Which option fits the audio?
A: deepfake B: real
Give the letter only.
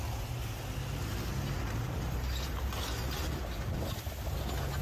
B